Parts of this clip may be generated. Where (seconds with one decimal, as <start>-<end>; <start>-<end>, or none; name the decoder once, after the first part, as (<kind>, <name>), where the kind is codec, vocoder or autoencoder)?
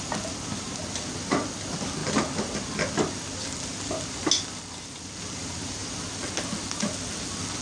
none